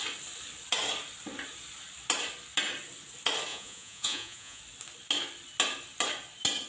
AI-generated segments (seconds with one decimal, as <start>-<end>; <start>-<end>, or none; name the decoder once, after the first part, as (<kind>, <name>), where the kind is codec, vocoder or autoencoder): 3.5-4.6 (vocoder, Vocos)